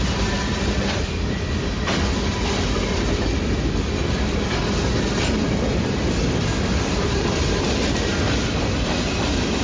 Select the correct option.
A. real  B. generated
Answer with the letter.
A